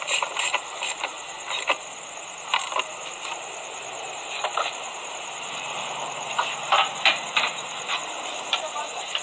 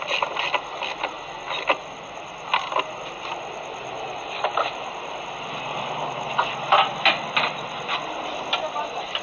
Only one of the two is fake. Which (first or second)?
first